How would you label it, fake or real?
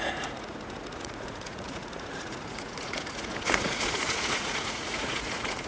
fake